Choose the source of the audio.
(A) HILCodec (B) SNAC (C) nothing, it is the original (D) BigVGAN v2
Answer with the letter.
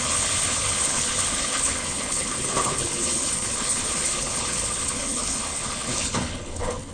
A